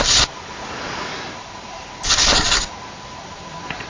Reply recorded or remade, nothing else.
recorded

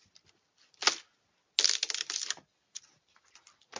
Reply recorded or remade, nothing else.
recorded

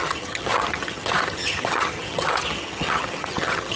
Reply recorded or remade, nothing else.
remade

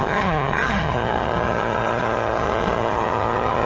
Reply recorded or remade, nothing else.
remade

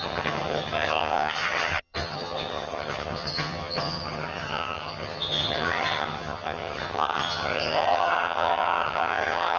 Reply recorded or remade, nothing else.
remade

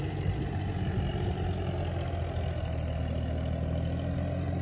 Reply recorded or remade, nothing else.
recorded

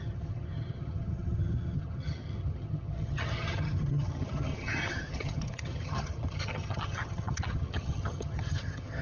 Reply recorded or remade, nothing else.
remade